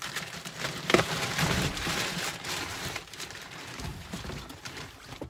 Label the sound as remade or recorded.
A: remade